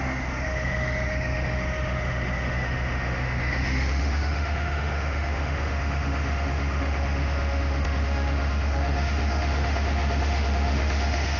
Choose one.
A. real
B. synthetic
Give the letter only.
B